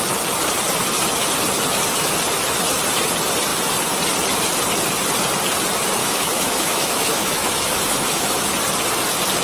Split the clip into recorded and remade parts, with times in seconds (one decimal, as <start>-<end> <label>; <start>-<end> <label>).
0.0-6.0 recorded; 6.0-8.5 remade; 8.5-9.4 recorded